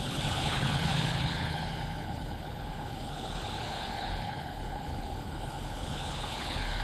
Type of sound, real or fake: fake